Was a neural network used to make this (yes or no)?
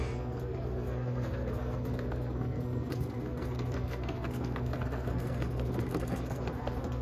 yes